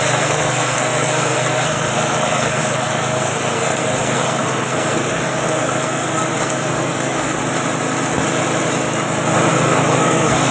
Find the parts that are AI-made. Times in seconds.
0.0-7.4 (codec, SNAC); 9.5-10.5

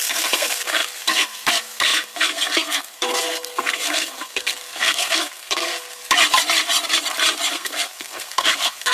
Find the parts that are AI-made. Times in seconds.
0.0-6.0 (codec, SNAC); 7.5-8.9